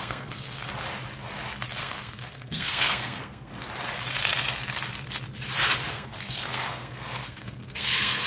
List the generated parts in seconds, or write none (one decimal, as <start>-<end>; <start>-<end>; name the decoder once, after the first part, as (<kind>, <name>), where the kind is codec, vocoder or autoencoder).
0.0-0.7 (codec, SNAC); 1.8-3.5; 5.9-8.3